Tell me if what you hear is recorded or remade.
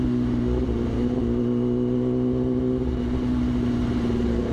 recorded